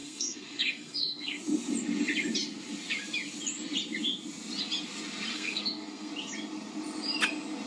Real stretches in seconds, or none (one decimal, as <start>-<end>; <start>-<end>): 1.4-5.3; 6.1-7.7